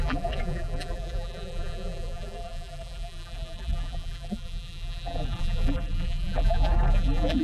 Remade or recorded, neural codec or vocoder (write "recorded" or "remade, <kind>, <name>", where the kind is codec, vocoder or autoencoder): remade, vocoder, BigVGAN v2